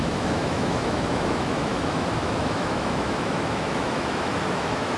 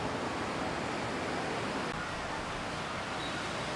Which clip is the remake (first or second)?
first